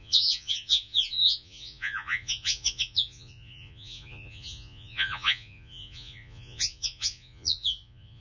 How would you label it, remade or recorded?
remade